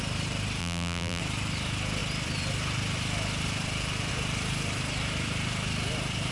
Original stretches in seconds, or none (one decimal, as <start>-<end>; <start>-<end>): 0.0-0.6; 1.2-6.3